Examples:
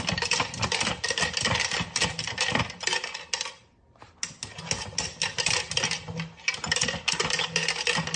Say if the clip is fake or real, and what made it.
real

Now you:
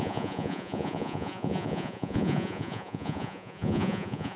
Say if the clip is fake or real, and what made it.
fake, vocoder, Vocos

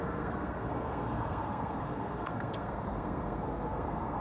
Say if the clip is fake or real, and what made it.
fake, codec, SNAC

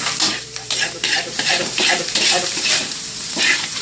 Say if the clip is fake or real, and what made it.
fake, vocoder, BigVGAN v2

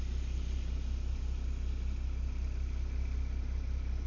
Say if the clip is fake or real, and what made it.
real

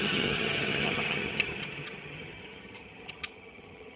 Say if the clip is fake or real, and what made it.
fake, vocoder, HiFi-GAN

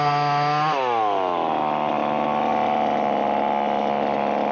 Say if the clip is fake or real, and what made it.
real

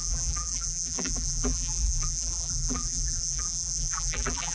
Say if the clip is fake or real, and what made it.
fake, vocoder, BigVGAN v2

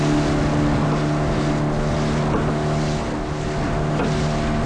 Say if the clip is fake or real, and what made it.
real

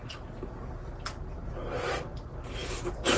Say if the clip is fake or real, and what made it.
real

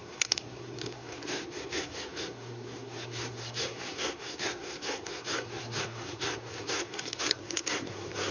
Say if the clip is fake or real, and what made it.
fake, codec, SNAC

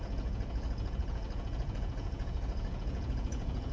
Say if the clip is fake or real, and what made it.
fake, vocoder, Vocos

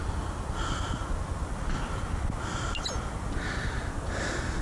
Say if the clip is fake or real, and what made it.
real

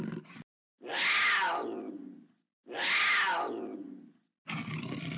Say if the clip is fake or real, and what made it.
real